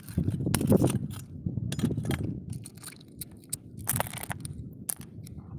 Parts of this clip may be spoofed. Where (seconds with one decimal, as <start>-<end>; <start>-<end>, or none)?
none

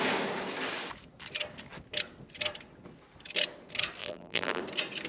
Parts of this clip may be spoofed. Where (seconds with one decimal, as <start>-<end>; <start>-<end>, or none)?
4.0-4.6

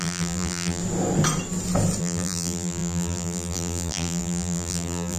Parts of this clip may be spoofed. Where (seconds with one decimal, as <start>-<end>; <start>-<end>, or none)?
0.0-0.8; 2.0-5.2

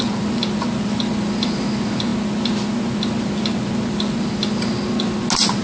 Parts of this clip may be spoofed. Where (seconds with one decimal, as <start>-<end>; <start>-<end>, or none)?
none

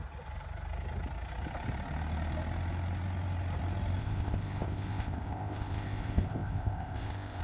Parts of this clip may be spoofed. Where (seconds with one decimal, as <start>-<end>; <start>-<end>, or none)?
4.0-7.4

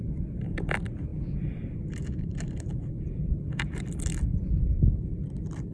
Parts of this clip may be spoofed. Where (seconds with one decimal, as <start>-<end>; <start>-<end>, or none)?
none

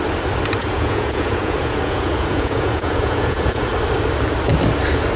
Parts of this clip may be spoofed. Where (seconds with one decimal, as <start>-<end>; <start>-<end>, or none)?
0.6-3.7